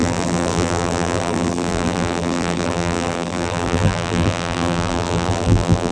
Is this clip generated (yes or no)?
yes